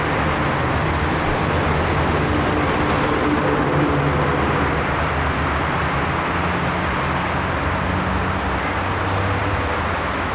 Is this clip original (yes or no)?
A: yes